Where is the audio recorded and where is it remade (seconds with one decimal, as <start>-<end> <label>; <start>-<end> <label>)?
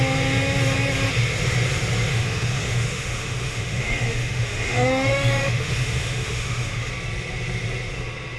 0.0-2.1 recorded; 2.1-6.9 remade; 6.9-8.4 recorded